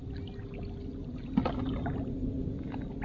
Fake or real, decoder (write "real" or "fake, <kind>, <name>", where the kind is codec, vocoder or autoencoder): real